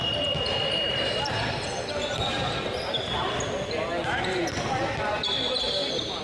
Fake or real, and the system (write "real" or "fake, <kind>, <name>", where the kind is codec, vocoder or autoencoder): real